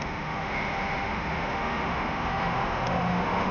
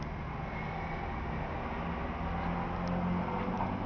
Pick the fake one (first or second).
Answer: first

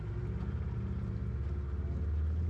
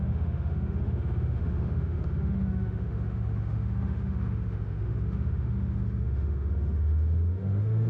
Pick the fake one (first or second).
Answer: second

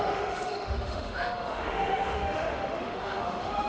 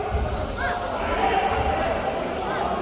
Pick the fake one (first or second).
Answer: first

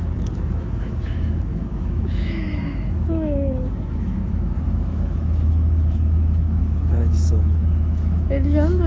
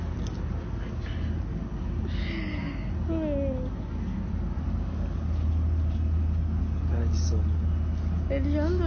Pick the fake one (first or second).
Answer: first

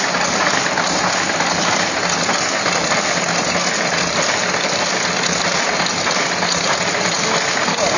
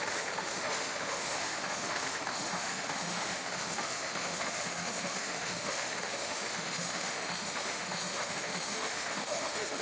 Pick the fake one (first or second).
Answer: second